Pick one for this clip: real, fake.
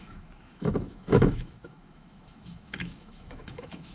fake